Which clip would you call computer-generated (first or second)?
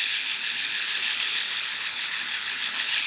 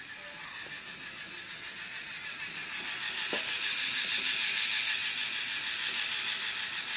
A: first